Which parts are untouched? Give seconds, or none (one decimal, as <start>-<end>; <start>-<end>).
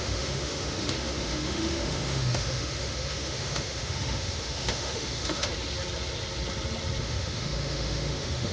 5.5-7.0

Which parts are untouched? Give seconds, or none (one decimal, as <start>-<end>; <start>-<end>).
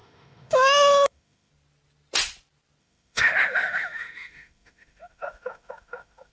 1.5-2.8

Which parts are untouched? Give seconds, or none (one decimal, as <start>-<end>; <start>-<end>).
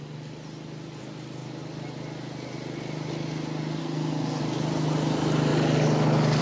0.0-3.8; 4.4-6.4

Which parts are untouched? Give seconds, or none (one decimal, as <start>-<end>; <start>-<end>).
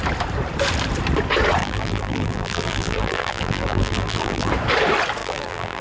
0.0-1.6; 4.5-5.2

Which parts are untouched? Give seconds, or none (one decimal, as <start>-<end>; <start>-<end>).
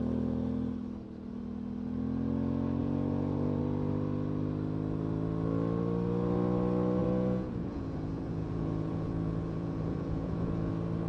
0.0-2.8; 3.6-7.0; 10.7-11.1